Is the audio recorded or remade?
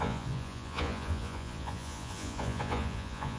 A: remade